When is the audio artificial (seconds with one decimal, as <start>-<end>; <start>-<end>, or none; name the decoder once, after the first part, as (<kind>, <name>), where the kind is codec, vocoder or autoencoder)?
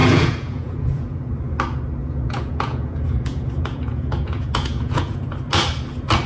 0.0-1.3 (vocoder, Vocos); 2.0-5.3